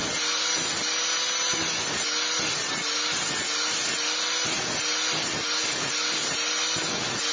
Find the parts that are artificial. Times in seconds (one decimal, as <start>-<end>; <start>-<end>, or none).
none